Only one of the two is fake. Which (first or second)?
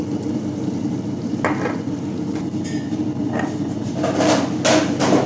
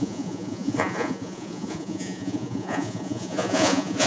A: second